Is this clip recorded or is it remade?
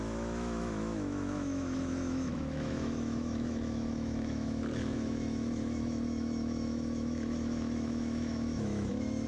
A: remade